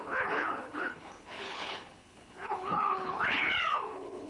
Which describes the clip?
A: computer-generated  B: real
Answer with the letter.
A